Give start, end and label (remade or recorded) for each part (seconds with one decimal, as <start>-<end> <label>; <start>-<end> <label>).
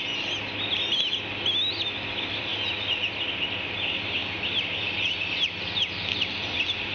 0.0-6.9 recorded